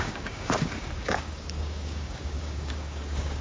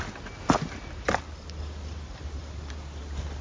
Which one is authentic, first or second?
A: second